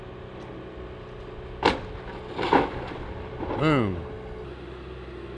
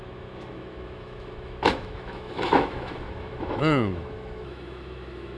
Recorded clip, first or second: first